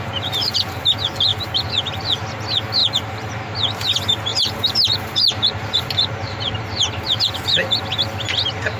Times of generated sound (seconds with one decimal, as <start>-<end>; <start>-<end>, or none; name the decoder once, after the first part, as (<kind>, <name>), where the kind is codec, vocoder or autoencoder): 4.3-6.8 (vocoder, BigVGAN v2)